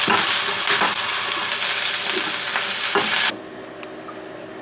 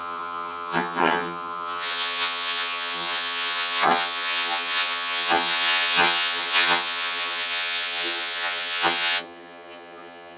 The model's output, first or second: second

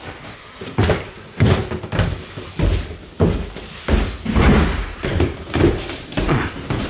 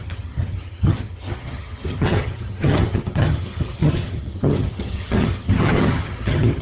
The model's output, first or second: second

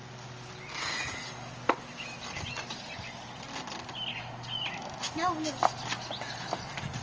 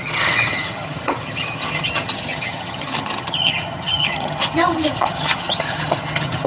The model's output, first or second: second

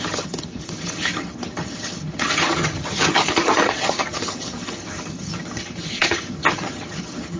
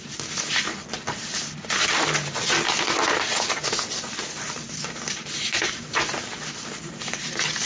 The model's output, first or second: first